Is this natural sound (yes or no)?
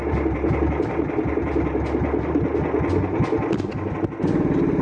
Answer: yes